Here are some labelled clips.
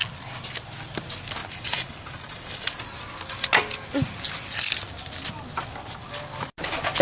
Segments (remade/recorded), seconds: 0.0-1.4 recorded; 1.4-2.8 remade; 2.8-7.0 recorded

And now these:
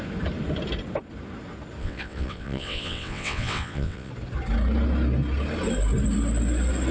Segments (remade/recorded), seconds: 0.0-1.8 recorded; 1.8-4.1 remade; 4.1-6.9 recorded

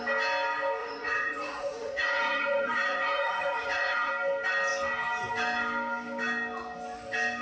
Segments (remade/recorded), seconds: 0.0-0.8 recorded; 0.8-4.1 remade; 4.1-7.4 recorded

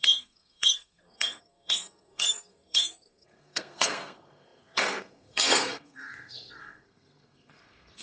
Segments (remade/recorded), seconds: 0.0-8.0 remade